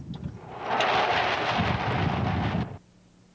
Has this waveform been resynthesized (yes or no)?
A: no